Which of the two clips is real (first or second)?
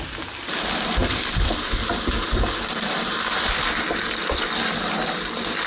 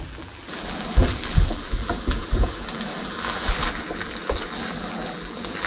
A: first